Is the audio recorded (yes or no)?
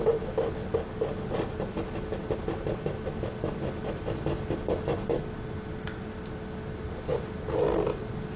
yes